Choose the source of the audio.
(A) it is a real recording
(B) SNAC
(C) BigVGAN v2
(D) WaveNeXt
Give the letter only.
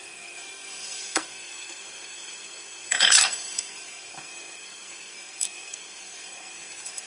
B